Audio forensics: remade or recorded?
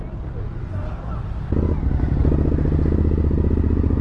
recorded